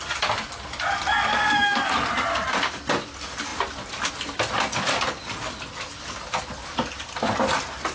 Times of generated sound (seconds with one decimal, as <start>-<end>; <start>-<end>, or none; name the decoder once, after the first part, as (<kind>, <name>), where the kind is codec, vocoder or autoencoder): 1.3-1.9 (codec, SNAC)